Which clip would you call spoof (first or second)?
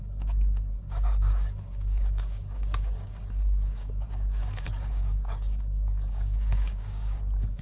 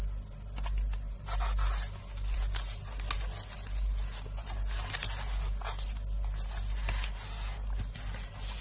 first